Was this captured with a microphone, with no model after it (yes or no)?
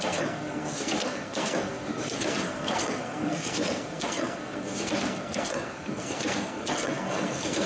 no